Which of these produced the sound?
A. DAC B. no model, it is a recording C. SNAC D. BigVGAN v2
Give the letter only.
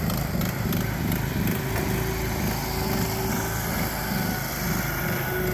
B